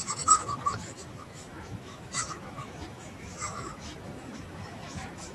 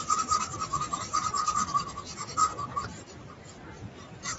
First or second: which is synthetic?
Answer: first